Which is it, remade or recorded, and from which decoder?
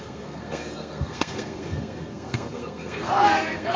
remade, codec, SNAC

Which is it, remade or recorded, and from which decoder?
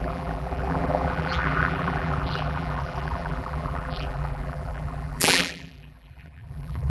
remade, vocoder, BigVGAN v2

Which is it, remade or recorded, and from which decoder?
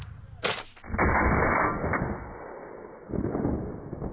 recorded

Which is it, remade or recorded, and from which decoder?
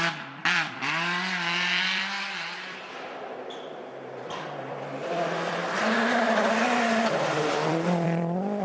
remade, vocoder, BigVGAN v2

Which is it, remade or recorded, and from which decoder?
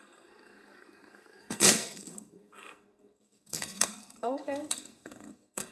remade, codec, SNAC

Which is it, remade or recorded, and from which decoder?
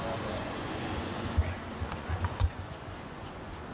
remade, vocoder, Vocos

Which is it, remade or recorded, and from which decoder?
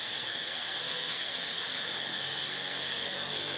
remade, codec, SNAC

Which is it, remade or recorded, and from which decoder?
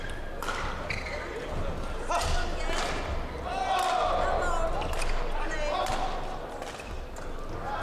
recorded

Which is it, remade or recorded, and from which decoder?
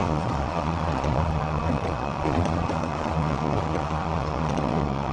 remade, vocoder, Vocos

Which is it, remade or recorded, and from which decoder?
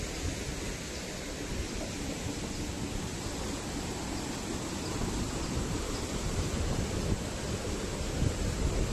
recorded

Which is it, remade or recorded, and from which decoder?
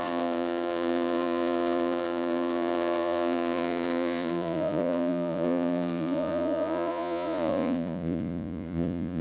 remade, vocoder, Vocos